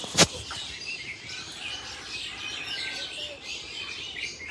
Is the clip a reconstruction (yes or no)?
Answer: no